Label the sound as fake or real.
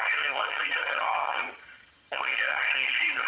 fake